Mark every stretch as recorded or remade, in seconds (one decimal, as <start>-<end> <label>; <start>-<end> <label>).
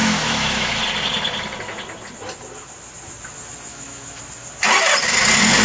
0.0-0.8 remade; 0.8-3.7 recorded; 3.7-4.2 remade; 4.2-5.6 recorded